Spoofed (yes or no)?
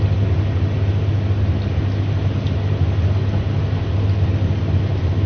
no